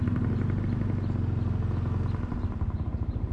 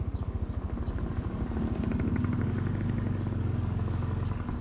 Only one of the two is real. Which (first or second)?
first